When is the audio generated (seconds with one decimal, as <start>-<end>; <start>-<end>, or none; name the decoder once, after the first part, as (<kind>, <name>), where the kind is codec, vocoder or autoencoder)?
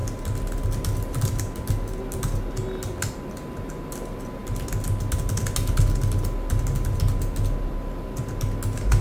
none